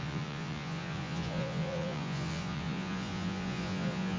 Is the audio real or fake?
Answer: fake